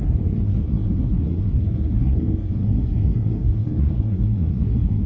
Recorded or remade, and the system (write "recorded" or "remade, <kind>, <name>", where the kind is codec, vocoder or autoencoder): remade, codec, SNAC